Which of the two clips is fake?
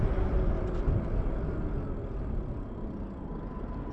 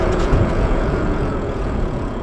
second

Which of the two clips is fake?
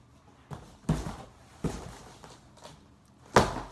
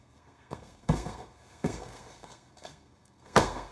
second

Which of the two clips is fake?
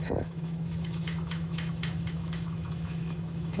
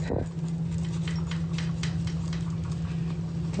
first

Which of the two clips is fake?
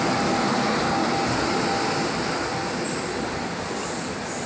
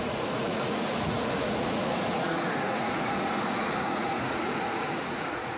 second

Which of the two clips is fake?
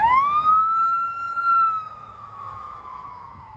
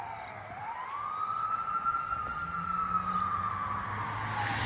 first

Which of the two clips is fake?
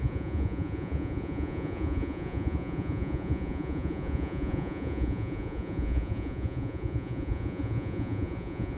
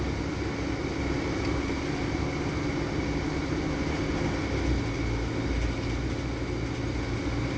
first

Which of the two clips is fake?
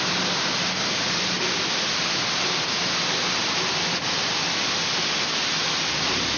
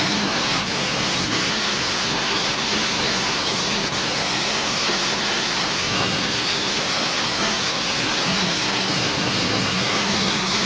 second